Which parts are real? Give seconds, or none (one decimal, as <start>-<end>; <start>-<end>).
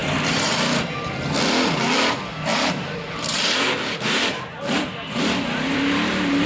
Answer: 1.1-2.5